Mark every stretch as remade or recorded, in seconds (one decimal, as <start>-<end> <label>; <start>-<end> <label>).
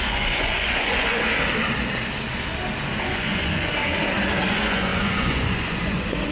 0.0-1.3 remade; 1.3-3.0 recorded; 3.0-3.7 remade; 3.7-4.5 recorded; 4.5-6.3 remade